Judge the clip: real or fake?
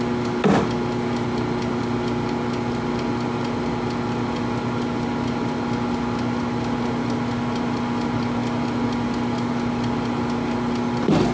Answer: real